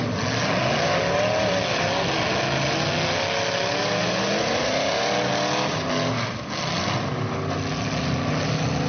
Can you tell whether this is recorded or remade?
recorded